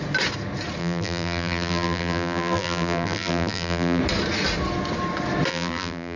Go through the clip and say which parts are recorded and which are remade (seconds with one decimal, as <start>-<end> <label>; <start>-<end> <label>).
0.0-0.8 recorded; 0.8-4.0 remade; 4.0-5.5 recorded; 5.5-6.2 remade